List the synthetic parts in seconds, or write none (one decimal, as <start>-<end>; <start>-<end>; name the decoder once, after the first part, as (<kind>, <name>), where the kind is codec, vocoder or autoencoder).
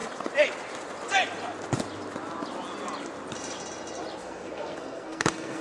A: 4.2-5.6 (codec, SNAC)